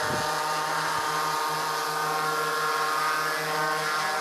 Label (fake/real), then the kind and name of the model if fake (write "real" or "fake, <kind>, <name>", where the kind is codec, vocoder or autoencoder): real